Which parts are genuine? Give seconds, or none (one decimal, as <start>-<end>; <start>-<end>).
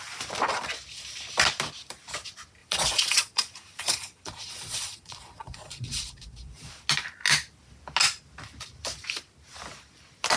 0.0-2.6; 6.7-10.4